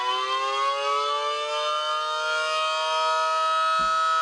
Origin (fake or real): real